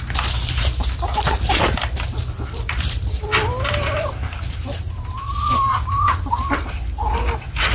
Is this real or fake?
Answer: real